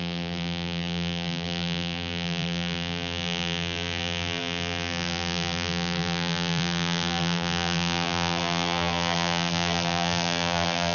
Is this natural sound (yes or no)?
no